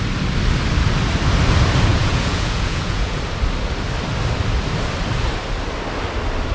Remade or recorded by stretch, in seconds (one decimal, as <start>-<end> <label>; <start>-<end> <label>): 0.0-1.9 recorded; 1.9-3.2 remade; 3.2-6.5 recorded